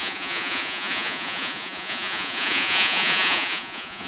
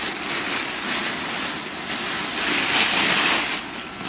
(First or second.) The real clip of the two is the second